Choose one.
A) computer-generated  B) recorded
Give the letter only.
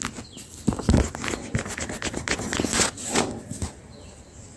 B